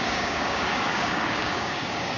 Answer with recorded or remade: remade